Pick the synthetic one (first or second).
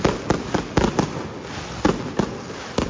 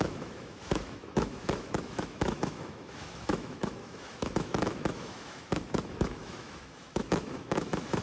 second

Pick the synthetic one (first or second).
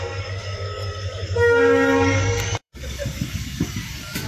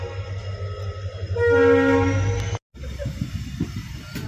first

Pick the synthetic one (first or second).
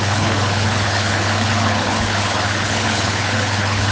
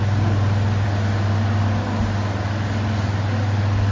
first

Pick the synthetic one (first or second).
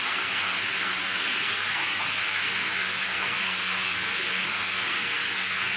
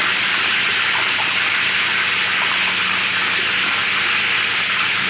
first